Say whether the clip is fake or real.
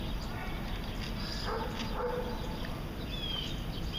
real